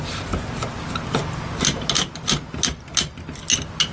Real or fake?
real